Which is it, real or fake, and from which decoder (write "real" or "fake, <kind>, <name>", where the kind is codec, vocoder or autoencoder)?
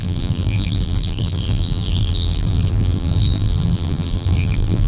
fake, vocoder, BigVGAN v2